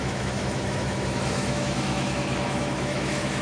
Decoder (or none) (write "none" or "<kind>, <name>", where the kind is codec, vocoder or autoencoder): autoencoder, DAC-VAE